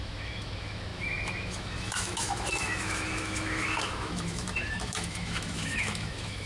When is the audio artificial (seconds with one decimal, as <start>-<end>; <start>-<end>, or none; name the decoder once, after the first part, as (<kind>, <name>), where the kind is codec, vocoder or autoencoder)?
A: 0.0-6.5 (autoencoder, DAC-VAE)